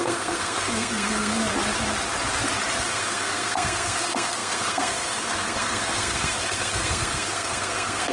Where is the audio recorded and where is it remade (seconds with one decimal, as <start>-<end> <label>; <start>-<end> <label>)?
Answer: 0.0-1.4 remade; 1.4-2.8 recorded; 2.8-8.1 remade